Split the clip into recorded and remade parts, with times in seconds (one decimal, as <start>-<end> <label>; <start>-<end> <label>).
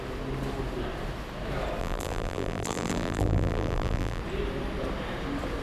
0.0-1.8 recorded; 1.8-4.2 remade; 4.2-5.6 recorded